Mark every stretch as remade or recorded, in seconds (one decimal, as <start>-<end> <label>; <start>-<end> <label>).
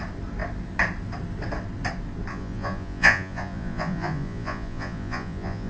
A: 0.0-2.3 recorded; 2.3-5.7 remade